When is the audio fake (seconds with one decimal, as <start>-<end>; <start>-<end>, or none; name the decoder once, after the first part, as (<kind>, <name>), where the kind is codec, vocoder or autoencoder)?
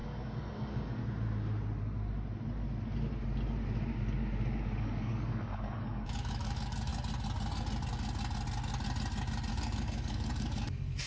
0.0-1.0 (codec, DAC); 4.8-6.9; 9.5-11.1